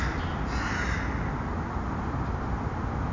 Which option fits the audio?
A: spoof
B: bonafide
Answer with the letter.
B